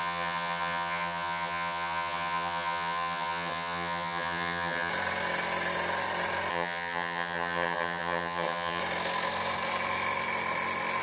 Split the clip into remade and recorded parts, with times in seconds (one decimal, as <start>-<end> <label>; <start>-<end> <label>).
0.0-4.9 remade; 4.9-6.5 recorded; 6.5-8.8 remade; 8.8-11.0 recorded